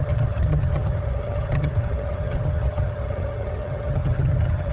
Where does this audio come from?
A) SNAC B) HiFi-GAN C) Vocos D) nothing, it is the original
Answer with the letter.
B